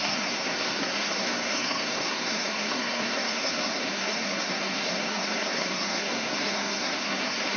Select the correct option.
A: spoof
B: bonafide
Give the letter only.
A